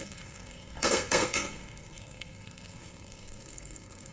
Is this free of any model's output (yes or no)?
no